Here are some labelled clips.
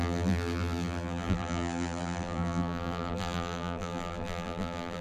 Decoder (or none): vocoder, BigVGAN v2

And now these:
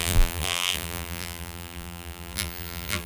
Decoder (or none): vocoder, BigVGAN v2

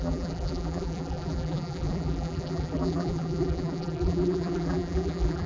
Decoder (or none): vocoder, BigVGAN v2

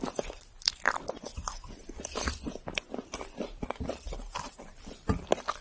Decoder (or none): vocoder, BigVGAN v2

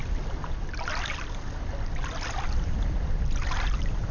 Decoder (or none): none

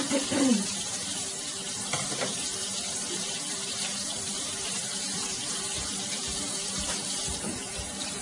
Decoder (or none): vocoder, BigVGAN v2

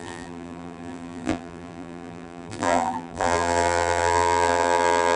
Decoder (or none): vocoder, BigVGAN v2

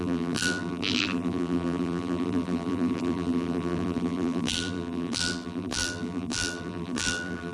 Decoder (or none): vocoder, BigVGAN v2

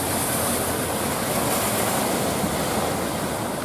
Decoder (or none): none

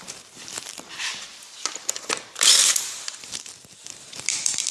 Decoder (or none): vocoder, BigVGAN v2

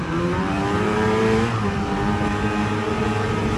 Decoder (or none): vocoder, BigVGAN v2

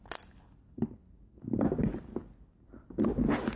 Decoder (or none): none